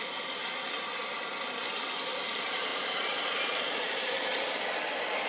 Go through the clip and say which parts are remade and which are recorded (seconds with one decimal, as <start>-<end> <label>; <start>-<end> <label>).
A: 0.0-0.4 recorded; 0.4-1.1 remade; 1.1-2.7 recorded; 2.7-4.6 remade; 4.6-5.3 recorded